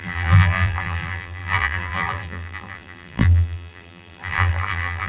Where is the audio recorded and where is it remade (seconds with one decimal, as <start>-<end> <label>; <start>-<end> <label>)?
0.0-5.1 remade